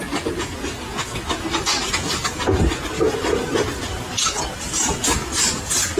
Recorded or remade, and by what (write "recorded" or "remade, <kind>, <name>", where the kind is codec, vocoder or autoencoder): recorded